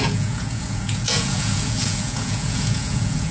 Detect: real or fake fake